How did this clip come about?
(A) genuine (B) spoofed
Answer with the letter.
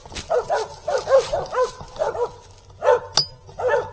A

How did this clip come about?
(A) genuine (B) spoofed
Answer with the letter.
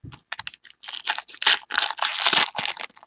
A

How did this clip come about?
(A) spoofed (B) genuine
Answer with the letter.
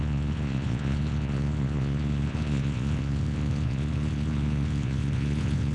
A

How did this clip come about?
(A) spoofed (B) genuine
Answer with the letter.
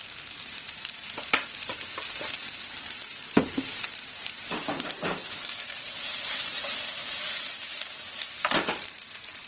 A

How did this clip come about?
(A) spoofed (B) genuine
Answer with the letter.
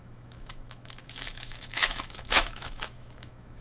A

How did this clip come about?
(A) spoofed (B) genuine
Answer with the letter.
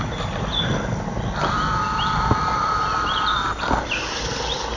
B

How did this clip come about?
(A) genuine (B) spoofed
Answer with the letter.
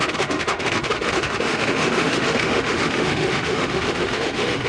B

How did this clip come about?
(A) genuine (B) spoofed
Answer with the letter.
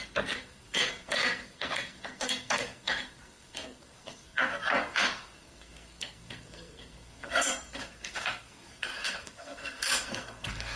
B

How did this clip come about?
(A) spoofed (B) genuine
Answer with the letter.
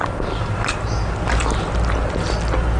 B